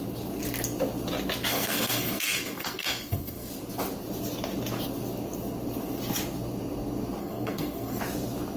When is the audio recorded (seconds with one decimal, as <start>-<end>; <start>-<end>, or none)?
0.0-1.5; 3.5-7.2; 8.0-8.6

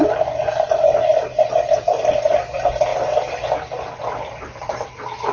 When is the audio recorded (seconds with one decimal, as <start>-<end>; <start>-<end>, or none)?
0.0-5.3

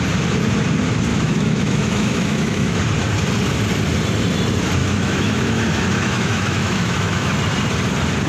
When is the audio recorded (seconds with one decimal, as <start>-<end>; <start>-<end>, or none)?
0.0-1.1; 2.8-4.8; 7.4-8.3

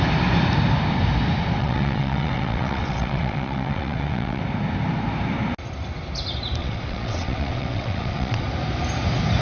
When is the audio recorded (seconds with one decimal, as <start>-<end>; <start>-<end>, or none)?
0.0-1.6; 4.4-6.6; 8.4-9.4

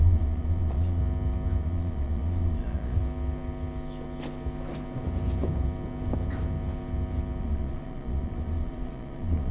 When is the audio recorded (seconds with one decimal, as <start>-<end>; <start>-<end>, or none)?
1.0-1.6; 3.0-7.4

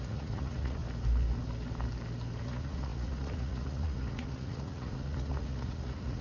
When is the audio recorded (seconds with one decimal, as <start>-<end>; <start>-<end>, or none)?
0.8-2.4

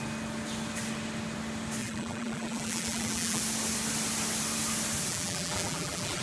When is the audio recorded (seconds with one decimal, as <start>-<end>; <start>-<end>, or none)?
0.0-1.8; 3.4-5.1